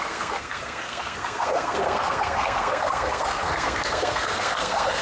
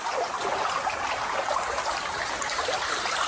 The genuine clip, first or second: second